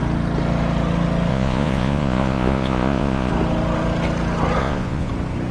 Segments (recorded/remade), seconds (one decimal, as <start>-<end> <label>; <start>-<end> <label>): 0.0-1.3 recorded; 1.3-3.3 remade; 3.3-4.6 recorded; 4.6-5.1 remade; 5.1-5.5 recorded